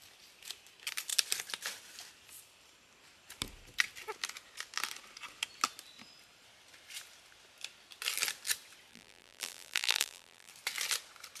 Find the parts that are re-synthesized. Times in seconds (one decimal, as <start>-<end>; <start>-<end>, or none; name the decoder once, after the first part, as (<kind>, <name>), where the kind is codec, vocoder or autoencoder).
8.9-10.5 (vocoder, BigVGAN v2)